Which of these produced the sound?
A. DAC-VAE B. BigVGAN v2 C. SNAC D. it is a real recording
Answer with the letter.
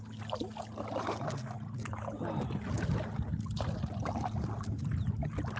D